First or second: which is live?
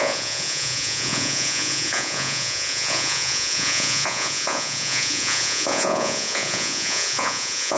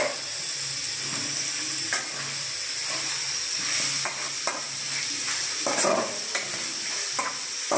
second